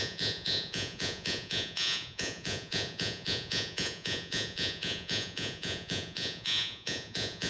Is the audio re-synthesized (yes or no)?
yes